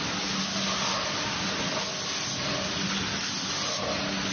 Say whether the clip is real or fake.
real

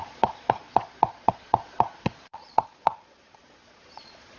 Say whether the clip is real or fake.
fake